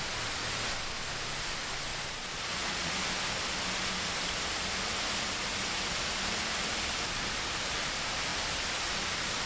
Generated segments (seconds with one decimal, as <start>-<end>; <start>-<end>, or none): 1.9-2.9